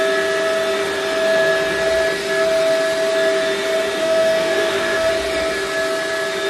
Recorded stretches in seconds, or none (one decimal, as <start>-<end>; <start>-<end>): 0.0-4.0; 5.1-6.5